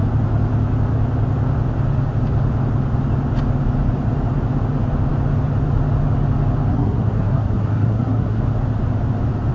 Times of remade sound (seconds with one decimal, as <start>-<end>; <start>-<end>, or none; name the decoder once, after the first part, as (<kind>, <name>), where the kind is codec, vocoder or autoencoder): 6.7-8.4 (codec, SNAC)